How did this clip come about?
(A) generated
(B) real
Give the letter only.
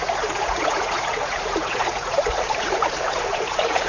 A